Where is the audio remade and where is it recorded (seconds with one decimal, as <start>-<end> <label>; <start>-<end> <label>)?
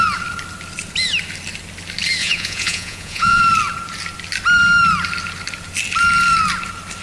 0.0-2.2 recorded; 2.2-3.4 remade; 3.4-7.0 recorded